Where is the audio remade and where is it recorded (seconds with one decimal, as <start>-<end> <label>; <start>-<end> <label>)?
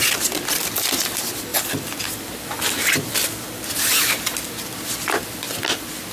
0.0-1.5 recorded; 1.5-2.1 remade; 2.1-6.1 recorded